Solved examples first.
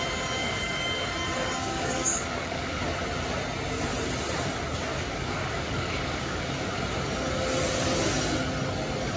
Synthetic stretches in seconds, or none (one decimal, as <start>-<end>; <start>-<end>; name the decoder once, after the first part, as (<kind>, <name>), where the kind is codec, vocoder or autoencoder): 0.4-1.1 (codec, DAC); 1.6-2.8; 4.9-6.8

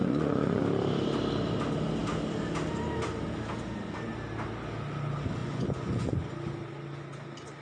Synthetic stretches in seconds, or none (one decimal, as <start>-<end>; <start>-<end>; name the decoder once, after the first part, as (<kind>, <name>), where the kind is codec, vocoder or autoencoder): 0.0-0.6 (vocoder, Vocos); 5.4-6.3

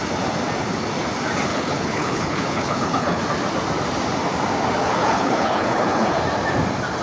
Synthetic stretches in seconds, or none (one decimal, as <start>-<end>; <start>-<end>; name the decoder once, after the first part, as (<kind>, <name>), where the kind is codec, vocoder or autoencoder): 1.5-3.2 (codec, HILCodec); 4.8-6.2

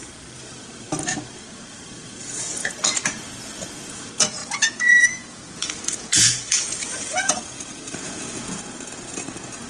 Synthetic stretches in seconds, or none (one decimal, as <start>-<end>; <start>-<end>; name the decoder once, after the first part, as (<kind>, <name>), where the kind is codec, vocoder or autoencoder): 0.0-0.4 (vocoder, Vocos); 1.7-9.7

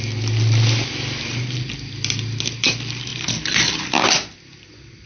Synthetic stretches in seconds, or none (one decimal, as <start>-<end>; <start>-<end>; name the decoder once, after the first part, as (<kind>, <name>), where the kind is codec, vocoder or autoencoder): none

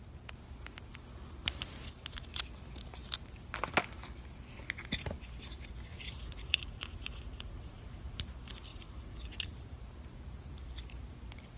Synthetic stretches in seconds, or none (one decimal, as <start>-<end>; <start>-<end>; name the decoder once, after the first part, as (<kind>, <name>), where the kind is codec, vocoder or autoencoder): 5.9-8.2 (vocoder, Vocos); 8.7-9.5